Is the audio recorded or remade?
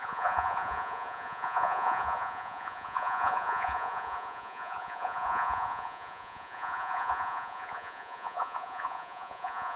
remade